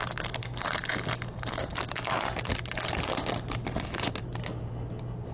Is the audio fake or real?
real